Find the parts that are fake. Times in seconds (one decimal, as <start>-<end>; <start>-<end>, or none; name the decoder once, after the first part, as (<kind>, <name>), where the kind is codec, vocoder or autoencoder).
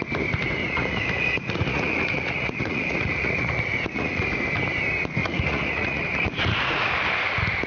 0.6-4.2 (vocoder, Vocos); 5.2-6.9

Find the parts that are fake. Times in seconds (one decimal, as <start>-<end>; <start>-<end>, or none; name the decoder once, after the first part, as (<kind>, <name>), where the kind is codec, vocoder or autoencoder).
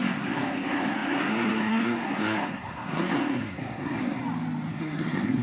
0.0-4.2 (codec, SNAC); 4.7-5.4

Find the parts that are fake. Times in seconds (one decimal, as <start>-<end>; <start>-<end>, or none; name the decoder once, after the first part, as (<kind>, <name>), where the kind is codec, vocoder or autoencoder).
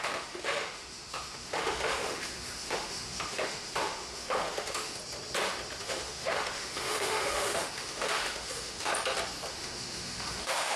0.0-5.0 (autoencoder, DAC-VAE); 5.8-8.9; 9.5-10.8